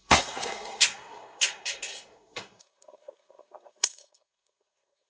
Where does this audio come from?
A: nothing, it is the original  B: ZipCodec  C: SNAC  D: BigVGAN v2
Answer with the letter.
C